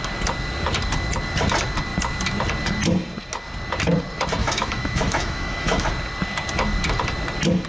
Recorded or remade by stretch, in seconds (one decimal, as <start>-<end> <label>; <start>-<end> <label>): 0.0-4.4 recorded; 4.4-5.9 remade; 5.9-7.7 recorded